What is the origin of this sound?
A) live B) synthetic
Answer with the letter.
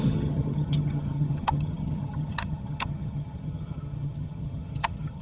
B